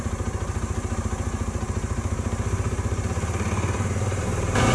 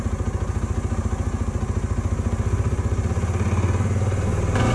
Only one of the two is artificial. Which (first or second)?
first